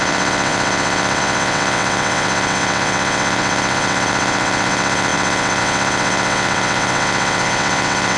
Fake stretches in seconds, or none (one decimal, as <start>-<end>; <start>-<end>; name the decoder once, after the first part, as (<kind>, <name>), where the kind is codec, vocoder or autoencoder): 0.0-8.2 (vocoder, WaveNeXt)